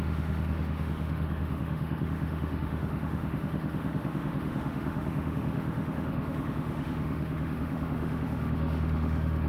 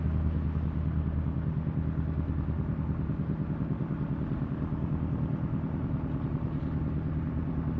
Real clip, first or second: second